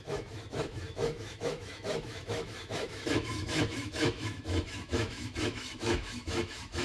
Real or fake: fake